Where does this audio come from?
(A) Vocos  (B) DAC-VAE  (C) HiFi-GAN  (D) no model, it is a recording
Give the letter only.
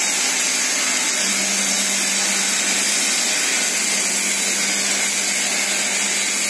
D